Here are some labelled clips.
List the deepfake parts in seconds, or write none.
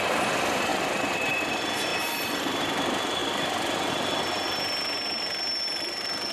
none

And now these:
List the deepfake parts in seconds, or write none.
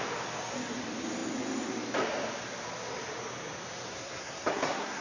3.9-5.0 (codec, SNAC)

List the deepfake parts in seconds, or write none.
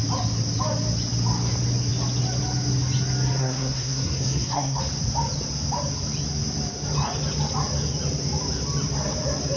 3.4-4.8 (codec, SNAC)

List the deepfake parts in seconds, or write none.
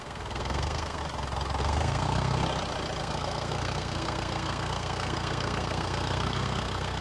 0.0-1.0 (codec, SNAC); 1.6-2.4; 3.0-7.0